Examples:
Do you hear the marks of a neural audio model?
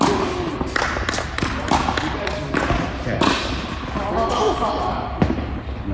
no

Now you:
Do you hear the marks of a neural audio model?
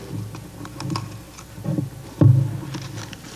no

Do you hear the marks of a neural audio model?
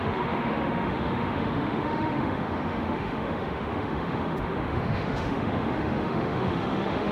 yes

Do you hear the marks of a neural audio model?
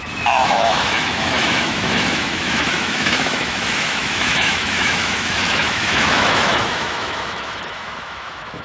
yes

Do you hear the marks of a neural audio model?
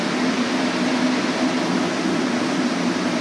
no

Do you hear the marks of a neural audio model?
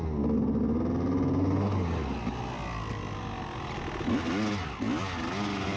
no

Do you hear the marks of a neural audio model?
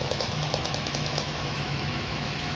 yes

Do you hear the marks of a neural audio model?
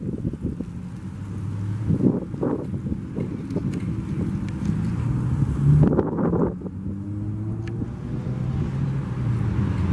no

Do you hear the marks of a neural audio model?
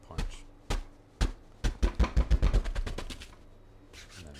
no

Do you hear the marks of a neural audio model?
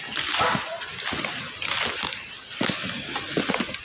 no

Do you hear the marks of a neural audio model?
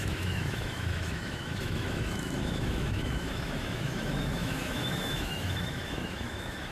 yes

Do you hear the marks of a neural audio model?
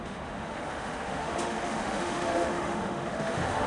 yes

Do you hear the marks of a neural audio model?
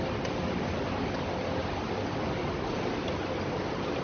no